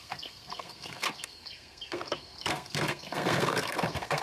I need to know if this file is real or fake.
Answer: fake